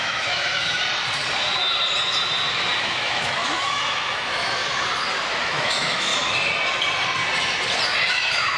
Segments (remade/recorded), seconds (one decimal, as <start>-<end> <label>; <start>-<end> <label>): 0.0-0.8 remade; 0.8-2.8 recorded; 2.8-4.6 remade; 4.6-5.4 recorded; 5.4-6.1 remade; 6.1-8.1 recorded; 8.1-8.6 remade